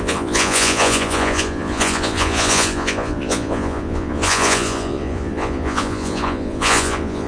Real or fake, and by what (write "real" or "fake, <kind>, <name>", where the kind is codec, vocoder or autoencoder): fake, vocoder, Vocos